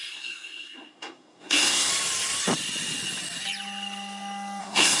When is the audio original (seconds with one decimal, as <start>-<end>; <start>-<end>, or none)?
1.9-4.6